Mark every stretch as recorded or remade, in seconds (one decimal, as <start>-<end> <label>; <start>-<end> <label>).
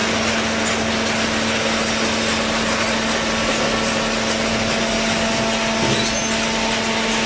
0.0-7.3 recorded